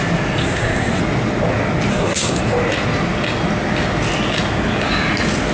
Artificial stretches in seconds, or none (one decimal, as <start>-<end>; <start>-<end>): 0.4-1.0; 1.9-2.4